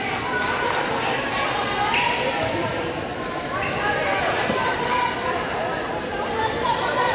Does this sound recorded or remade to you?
recorded